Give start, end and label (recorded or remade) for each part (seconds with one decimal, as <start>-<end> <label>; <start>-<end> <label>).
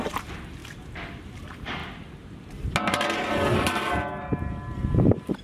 0.0-0.6 remade; 0.6-1.2 recorded; 1.2-1.8 remade; 1.8-4.3 recorded; 4.3-5.4 remade